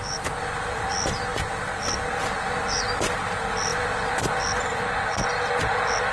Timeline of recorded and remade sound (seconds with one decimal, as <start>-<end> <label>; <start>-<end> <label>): 0.0-6.1 recorded